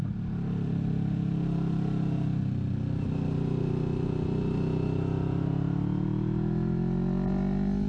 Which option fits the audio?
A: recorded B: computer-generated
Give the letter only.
A